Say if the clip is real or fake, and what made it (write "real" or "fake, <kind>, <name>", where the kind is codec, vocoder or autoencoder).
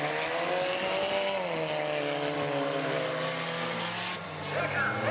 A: real